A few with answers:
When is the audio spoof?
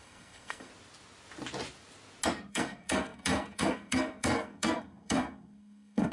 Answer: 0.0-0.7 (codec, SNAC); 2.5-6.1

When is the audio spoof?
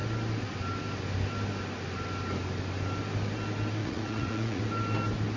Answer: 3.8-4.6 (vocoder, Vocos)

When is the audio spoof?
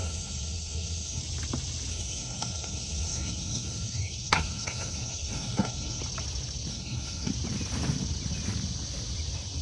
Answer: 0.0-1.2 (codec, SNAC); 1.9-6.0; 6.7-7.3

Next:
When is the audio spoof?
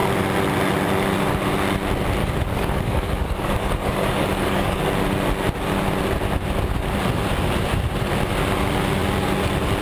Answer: 2.2-4.8 (codec, DAC)